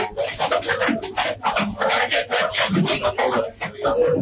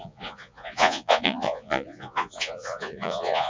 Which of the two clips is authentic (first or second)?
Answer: first